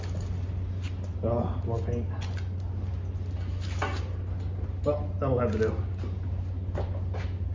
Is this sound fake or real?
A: real